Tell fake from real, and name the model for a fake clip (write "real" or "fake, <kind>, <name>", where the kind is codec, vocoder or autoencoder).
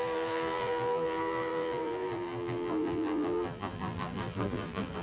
fake, vocoder, BigVGAN v2